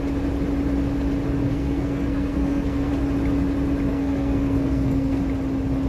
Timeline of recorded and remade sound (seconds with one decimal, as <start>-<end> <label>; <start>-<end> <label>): 0.0-1.5 recorded; 1.5-2.9 remade; 2.9-3.9 recorded; 3.9-5.2 remade; 5.2-5.9 recorded